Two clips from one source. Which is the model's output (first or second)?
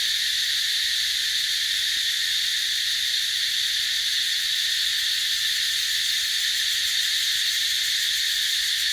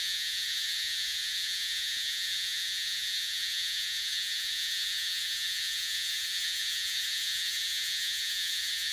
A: second